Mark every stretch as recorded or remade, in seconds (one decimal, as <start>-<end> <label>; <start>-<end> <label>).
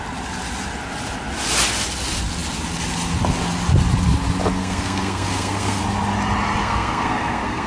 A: 0.0-4.6 recorded; 4.6-5.8 remade; 5.8-6.6 recorded; 6.6-7.7 remade